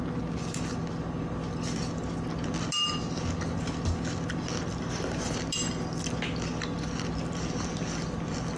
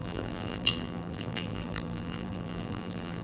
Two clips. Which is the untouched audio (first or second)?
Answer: first